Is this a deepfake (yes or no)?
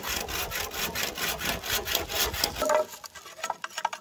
no